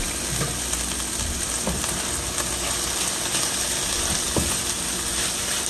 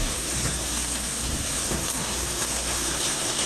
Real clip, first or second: first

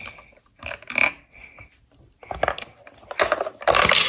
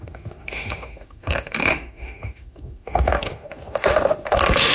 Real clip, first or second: first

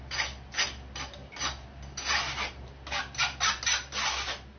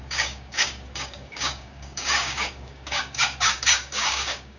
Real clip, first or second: first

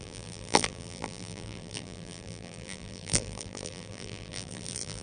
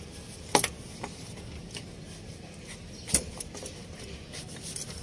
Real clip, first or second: second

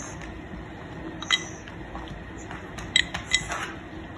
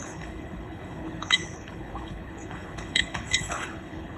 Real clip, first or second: first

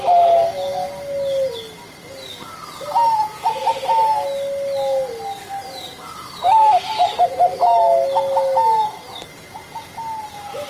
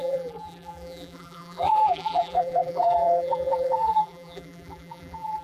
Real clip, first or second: first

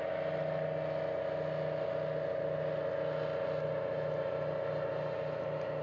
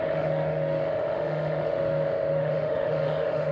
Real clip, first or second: first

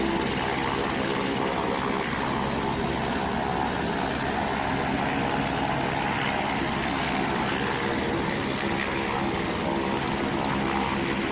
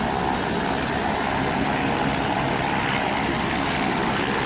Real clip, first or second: first